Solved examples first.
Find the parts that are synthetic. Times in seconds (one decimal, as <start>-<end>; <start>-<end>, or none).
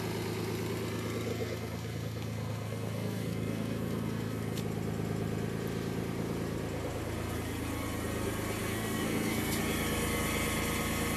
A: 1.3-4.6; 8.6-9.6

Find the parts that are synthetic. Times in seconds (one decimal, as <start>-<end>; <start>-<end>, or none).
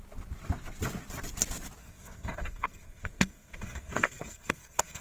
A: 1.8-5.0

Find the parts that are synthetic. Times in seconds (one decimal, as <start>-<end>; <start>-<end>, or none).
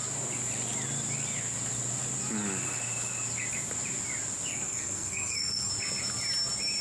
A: 4.5-5.7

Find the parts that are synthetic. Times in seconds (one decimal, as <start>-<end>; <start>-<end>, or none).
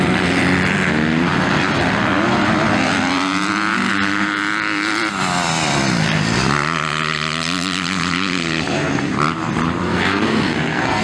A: 9.8-11.0